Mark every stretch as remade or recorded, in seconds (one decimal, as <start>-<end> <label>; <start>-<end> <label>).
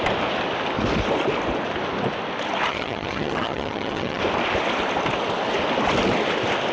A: 0.0-2.7 recorded; 2.7-4.2 remade; 4.2-6.7 recorded